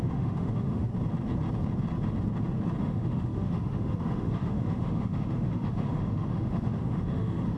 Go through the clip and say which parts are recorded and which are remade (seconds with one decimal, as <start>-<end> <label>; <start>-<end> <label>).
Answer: 0.0-0.9 remade; 0.9-2.8 recorded; 2.8-7.6 remade